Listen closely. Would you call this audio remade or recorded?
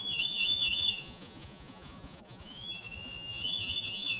remade